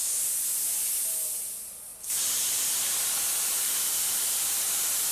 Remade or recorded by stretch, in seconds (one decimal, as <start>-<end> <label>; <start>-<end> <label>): 0.0-0.9 remade; 0.9-1.9 recorded; 1.9-5.1 remade